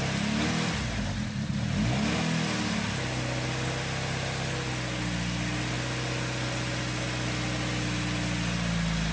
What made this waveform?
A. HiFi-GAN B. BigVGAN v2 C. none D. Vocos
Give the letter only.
C